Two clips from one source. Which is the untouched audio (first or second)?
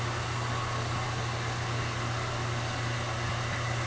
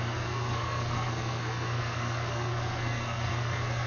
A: first